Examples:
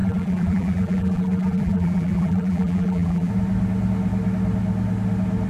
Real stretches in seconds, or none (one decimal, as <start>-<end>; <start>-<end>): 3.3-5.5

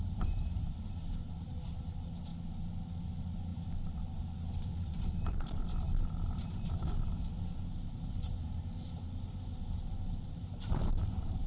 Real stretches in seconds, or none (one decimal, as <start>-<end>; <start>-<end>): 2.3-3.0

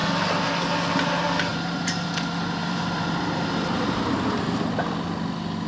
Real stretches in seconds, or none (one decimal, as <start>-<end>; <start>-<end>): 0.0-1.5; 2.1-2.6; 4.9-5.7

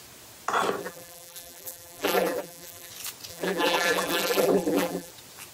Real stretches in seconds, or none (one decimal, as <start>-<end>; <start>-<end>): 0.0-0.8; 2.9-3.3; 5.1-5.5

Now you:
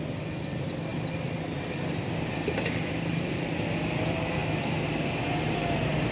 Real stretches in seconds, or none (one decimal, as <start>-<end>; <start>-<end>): 4.4-6.1

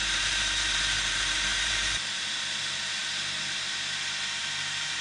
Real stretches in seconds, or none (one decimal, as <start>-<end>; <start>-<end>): 3.0-4.4

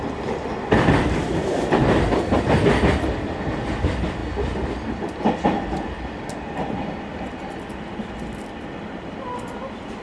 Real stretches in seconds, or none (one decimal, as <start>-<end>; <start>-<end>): 4.2-5.2